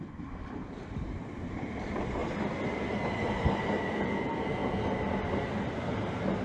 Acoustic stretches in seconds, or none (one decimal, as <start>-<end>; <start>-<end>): 0.0-6.4